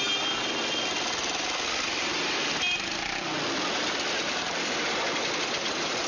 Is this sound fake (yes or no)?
no